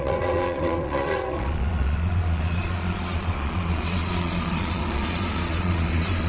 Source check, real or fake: fake